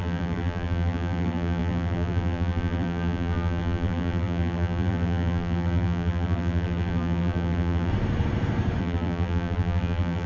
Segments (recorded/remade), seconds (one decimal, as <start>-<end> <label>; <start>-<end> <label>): 0.0-7.9 remade; 7.9-8.8 recorded; 8.8-10.3 remade